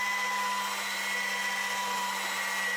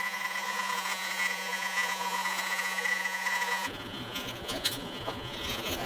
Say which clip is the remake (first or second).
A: second